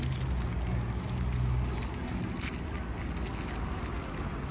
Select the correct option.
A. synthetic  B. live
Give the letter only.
B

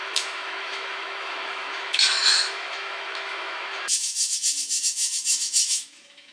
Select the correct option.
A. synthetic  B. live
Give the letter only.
A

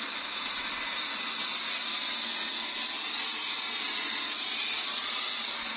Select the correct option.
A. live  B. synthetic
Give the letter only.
A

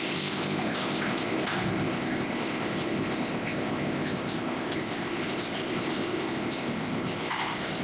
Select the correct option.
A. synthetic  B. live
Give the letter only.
A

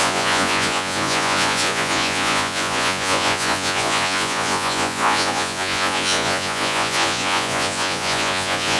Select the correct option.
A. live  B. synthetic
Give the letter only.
B